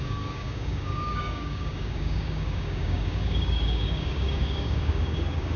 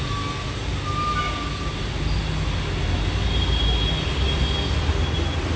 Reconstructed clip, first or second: first